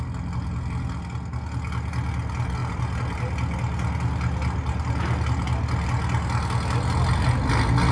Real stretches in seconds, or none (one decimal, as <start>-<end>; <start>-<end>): 0.0-7.9